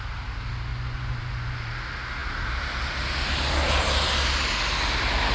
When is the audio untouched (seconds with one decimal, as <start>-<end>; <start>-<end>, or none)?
0.0-0.7; 1.7-5.3

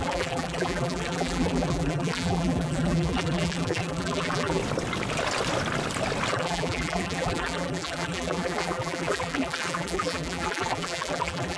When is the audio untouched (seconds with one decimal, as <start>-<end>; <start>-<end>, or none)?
4.6-6.3

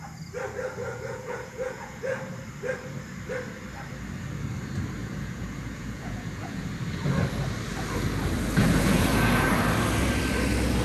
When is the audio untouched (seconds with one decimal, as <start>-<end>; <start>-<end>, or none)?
0.0-0.8; 2.0-5.0; 6.7-8.6; 9.5-10.8